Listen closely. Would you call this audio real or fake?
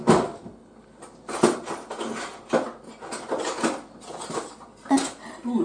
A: real